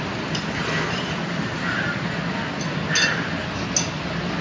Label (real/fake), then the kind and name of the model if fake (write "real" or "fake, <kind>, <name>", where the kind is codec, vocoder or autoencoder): real